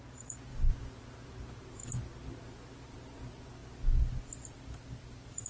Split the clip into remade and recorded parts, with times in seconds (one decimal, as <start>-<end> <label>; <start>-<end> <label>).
0.0-0.5 remade; 0.5-1.0 recorded; 1.0-1.8 remade; 1.8-2.3 recorded; 2.3-3.6 remade; 3.6-5.0 recorded; 5.0-5.5 remade